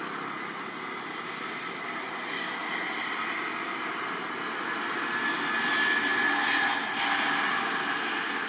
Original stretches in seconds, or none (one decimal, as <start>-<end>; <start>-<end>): 0.0-8.5